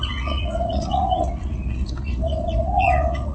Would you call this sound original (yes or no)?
no